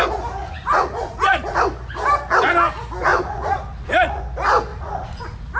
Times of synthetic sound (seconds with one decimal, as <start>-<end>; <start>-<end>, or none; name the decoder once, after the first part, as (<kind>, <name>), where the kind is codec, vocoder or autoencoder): 0.4-1.6 (vocoder, Vocos); 3.1-4.2; 4.7-5.6